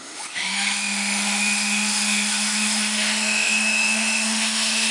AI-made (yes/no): yes